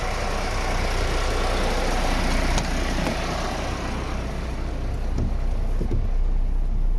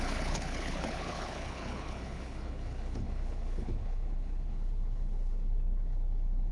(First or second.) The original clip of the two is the first